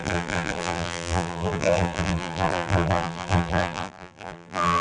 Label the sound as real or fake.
fake